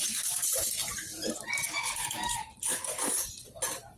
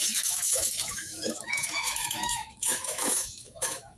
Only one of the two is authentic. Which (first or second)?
first